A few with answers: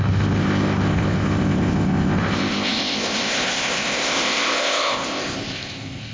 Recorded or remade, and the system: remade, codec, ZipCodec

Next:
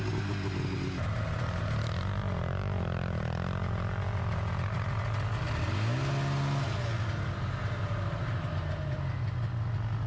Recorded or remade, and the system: recorded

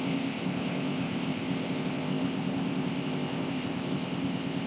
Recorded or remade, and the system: remade, codec, ZipCodec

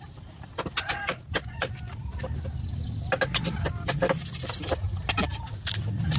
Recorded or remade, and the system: recorded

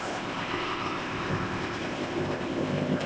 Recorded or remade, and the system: remade, codec, ZipCodec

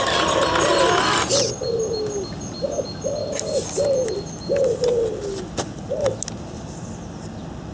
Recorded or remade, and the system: recorded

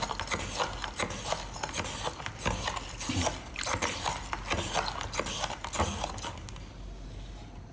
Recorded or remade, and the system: recorded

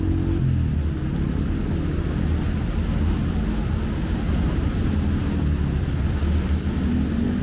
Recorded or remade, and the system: recorded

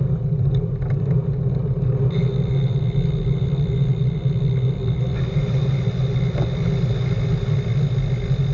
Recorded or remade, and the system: recorded